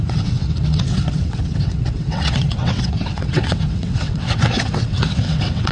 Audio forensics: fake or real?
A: fake